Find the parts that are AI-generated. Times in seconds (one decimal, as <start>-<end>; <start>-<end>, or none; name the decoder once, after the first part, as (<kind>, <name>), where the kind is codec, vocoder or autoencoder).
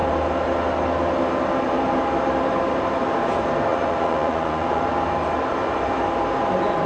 3.7-4.8 (vocoder, Vocos)